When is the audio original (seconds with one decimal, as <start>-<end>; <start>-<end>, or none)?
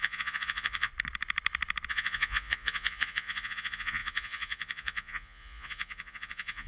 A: 0.9-1.9